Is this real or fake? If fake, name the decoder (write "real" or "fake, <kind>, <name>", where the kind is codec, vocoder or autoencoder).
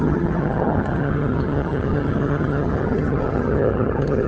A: fake, vocoder, HiFi-GAN